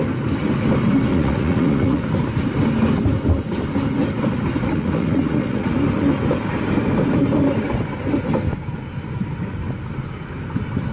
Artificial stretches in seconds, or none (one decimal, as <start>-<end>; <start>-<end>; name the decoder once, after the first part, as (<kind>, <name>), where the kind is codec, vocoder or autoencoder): 1.1-2.0 (vocoder, Vocos); 4.6-5.7